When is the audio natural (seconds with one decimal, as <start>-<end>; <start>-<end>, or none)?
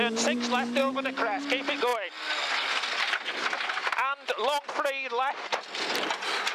0.0-0.8; 1.4-6.5